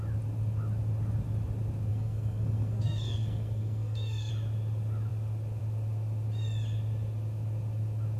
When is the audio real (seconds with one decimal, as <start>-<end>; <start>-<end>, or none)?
0.0-1.9; 4.3-8.2